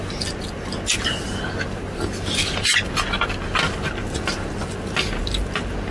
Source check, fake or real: real